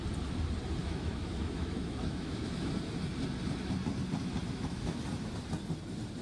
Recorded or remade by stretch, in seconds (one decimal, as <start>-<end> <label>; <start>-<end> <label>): 0.0-0.8 recorded; 0.8-2.7 remade; 2.7-4.4 recorded; 4.4-5.0 remade; 5.0-6.2 recorded